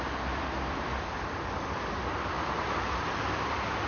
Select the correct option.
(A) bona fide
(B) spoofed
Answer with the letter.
A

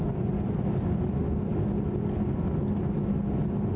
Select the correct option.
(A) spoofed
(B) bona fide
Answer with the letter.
B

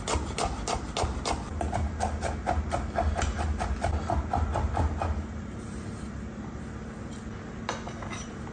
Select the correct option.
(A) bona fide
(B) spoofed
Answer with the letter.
A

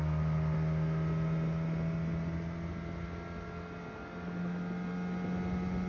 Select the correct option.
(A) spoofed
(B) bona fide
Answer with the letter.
B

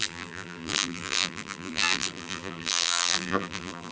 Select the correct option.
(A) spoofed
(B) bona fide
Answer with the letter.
A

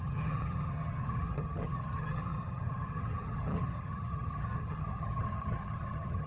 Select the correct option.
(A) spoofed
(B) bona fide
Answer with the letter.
A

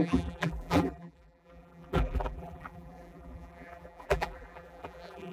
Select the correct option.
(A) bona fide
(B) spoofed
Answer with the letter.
B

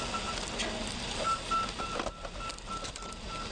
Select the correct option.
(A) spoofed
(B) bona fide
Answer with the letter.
B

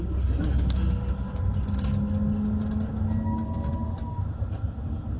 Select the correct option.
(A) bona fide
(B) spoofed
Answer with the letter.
A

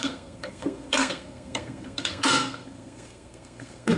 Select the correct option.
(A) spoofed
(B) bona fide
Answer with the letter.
A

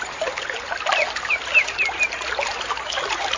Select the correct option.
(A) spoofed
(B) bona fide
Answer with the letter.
B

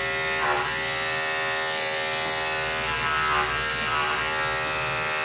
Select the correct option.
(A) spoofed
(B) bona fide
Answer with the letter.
B